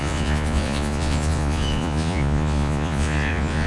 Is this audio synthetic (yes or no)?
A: yes